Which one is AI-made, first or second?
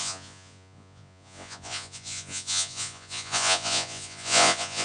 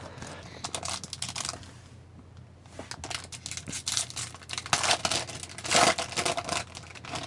first